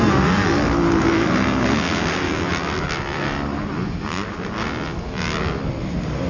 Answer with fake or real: real